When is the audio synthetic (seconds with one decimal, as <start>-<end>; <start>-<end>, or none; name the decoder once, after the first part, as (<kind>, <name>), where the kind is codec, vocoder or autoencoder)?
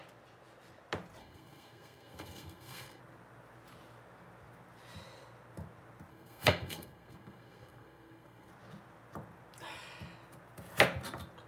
1.2-3.0 (codec, SNAC); 6.1-8.5